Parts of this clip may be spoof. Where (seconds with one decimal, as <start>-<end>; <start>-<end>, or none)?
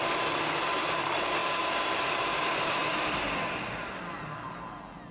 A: 0.0-1.4; 2.1-5.1